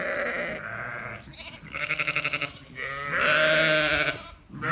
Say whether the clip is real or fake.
real